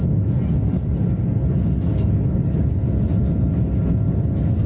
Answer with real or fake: real